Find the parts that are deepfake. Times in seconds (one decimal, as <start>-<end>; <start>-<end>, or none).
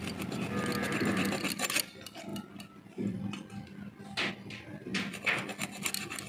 none